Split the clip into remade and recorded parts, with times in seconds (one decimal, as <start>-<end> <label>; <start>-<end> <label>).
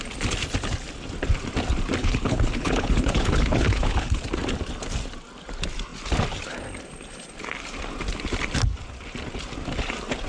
0.0-2.0 recorded; 2.0-4.2 remade; 4.2-10.3 recorded